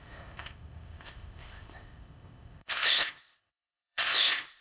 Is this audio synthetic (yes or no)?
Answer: yes